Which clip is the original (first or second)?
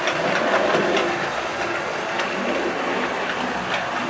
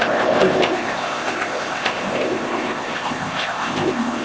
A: first